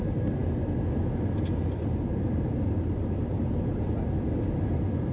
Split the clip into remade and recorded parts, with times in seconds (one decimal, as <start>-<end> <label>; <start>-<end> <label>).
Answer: 0.0-5.1 recorded